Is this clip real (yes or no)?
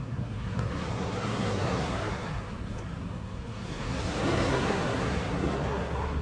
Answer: no